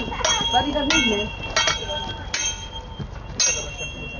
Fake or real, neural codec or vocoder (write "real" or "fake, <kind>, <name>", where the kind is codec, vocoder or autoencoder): real